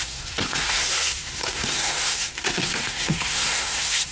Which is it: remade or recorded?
remade